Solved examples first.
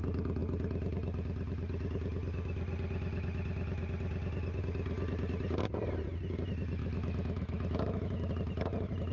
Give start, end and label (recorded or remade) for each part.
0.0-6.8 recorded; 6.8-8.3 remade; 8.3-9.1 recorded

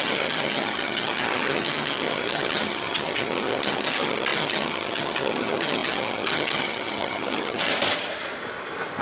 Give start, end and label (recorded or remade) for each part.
0.0-7.7 remade; 7.7-9.0 recorded

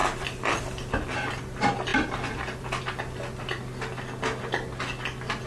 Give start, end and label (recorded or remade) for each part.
0.0-0.6 remade; 0.6-1.9 recorded; 1.9-2.8 remade; 2.8-5.5 recorded

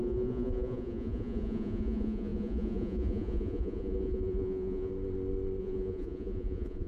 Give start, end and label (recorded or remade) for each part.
0.0-4.9 remade; 4.9-5.6 recorded; 5.6-6.9 remade

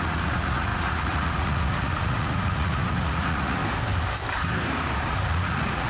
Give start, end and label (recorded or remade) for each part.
0.0-3.6 remade; 3.6-5.0 recorded; 5.0-5.9 remade

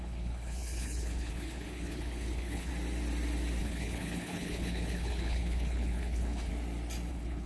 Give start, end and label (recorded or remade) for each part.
0.0-2.7 remade; 2.7-3.6 recorded; 3.6-6.5 remade; 6.5-7.1 recorded; 7.1-7.5 remade